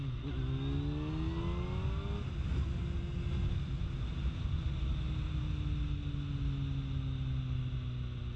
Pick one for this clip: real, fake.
real